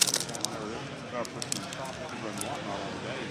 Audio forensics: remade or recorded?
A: recorded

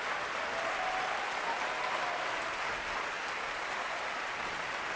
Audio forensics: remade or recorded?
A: recorded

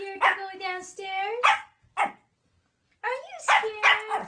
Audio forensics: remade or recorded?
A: recorded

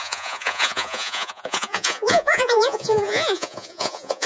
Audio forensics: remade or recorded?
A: remade